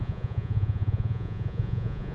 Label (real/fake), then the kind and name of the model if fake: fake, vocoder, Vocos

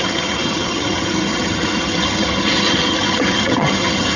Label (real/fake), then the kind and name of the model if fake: fake, vocoder, HiFi-GAN